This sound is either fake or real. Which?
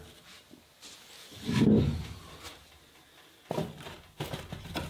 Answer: real